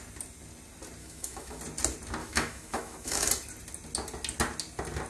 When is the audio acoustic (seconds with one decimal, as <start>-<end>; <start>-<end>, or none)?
0.0-1.0; 1.6-2.2; 3.3-5.1